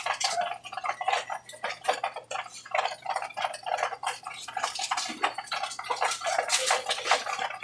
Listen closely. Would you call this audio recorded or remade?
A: recorded